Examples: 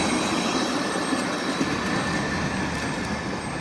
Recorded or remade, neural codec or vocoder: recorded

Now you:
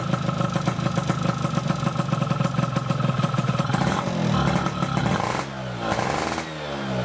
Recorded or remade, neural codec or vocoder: recorded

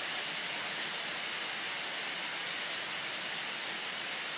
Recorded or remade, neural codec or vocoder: recorded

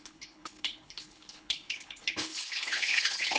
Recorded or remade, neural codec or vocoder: remade, codec, HILCodec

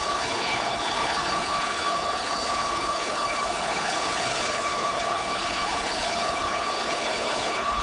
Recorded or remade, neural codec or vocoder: remade, codec, HILCodec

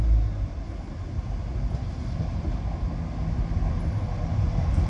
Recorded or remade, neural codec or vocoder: recorded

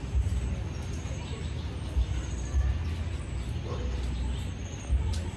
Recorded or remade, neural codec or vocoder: recorded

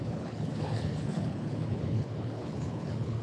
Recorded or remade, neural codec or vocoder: remade, codec, HILCodec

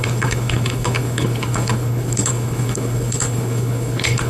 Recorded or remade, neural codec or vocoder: remade, codec, HILCodec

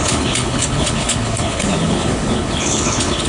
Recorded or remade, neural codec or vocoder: remade, codec, HILCodec